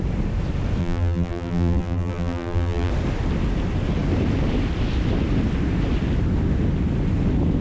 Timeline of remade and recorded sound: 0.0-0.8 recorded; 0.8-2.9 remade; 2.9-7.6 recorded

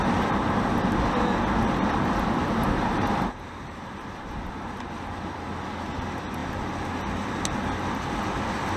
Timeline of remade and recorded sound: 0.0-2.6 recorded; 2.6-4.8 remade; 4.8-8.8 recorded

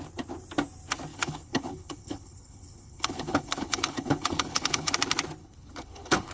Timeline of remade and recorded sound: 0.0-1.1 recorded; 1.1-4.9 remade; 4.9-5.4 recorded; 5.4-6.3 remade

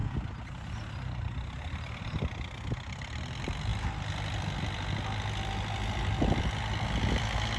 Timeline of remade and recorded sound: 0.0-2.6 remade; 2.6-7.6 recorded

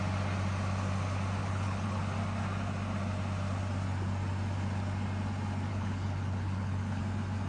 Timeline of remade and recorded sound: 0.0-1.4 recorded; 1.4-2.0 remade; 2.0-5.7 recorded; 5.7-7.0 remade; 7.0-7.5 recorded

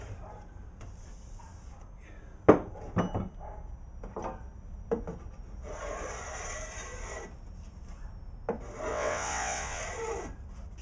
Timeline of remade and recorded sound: 0.0-8.9 recorded; 8.9-9.8 remade; 9.8-10.8 recorded

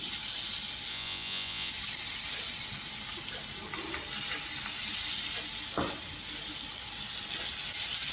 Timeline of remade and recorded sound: 0.0-0.9 recorded; 0.9-1.7 remade; 1.7-8.1 recorded